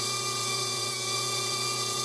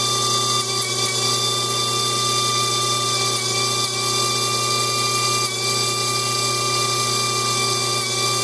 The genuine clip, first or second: second